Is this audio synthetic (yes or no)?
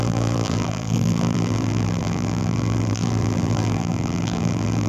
yes